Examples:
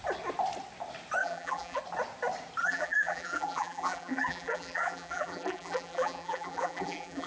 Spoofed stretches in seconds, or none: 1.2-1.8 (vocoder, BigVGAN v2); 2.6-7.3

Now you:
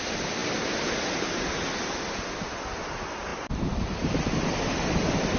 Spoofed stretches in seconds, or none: 0.4-1.1 (vocoder, BigVGAN v2)

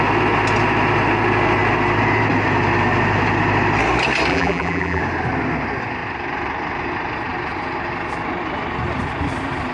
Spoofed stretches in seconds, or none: 4.3-5.0 (vocoder, BigVGAN v2)